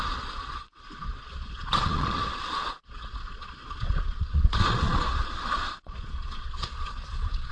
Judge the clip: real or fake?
fake